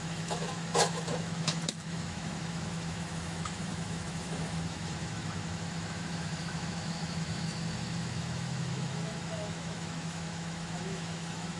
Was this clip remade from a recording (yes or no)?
yes